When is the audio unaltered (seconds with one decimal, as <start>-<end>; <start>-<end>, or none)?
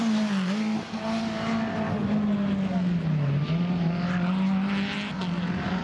0.0-5.8